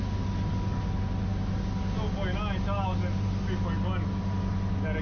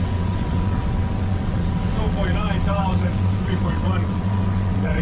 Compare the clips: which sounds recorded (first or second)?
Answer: first